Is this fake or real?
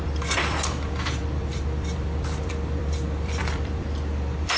fake